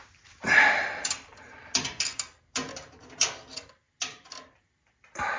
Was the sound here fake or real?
real